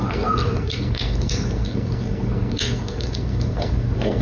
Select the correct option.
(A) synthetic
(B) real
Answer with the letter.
A